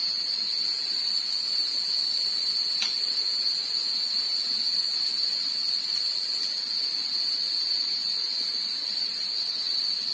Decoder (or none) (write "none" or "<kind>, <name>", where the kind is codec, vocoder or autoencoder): vocoder, BigVGAN v2